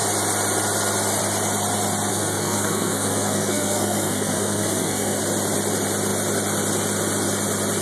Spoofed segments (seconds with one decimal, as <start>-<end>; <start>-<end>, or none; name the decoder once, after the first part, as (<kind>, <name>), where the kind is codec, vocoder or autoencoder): 2.1-5.2 (codec, SNAC)